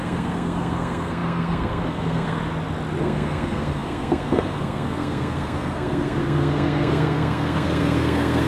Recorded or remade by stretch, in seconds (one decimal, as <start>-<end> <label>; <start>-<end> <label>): 0.0-2.4 remade; 2.4-3.0 recorded; 3.0-8.5 remade